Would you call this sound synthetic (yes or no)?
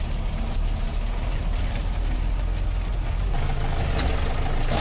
no